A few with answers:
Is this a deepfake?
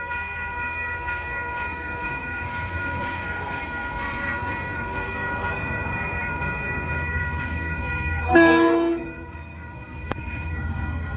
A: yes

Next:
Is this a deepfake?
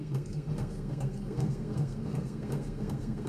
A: yes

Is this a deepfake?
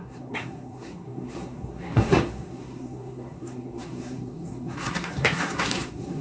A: yes